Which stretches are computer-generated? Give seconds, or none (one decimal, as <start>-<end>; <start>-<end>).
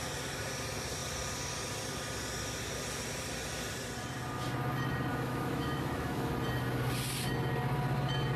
5.1-6.3